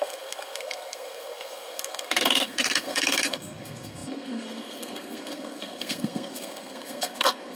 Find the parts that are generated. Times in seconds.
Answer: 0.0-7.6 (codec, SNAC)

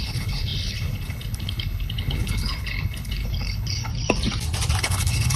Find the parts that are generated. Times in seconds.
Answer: 0.0-3.9 (codec, HILCodec); 4.8-5.4

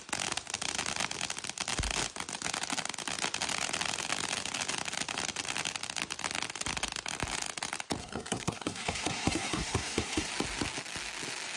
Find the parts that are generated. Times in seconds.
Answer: 8.0-10.3 (codec, SNAC)

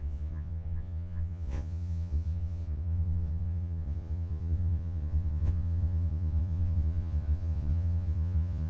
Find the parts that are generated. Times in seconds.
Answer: 0.0-8.7 (vocoder, Vocos)

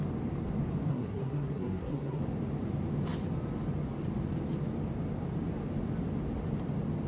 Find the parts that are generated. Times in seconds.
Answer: 0.9-2.2 (codec, SNAC)

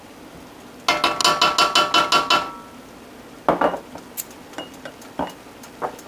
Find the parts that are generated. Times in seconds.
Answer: none